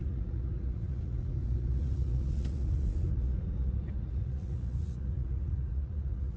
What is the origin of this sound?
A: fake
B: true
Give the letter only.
A